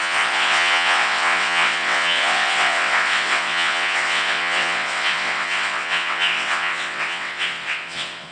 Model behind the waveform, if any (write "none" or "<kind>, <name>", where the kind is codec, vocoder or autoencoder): vocoder, WaveNeXt